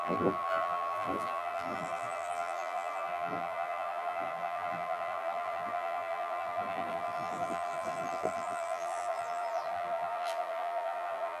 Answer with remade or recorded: remade